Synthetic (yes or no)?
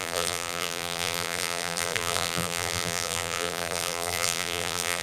yes